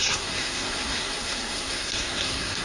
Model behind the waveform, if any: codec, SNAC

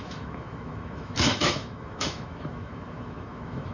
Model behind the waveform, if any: autoencoder, DAC-VAE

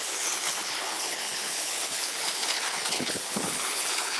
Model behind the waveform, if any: codec, HILCodec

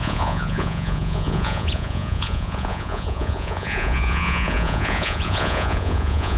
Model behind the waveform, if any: vocoder, Vocos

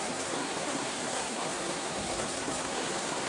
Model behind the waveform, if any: codec, SNAC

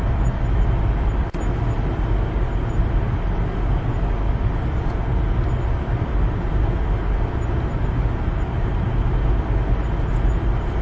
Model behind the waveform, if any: none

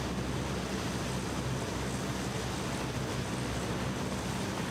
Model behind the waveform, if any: none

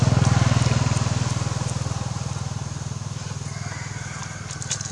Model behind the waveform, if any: none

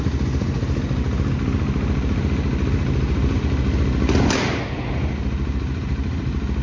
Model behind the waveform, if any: none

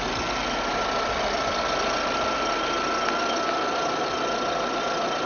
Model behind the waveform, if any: none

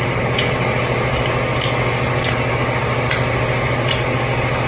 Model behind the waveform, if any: none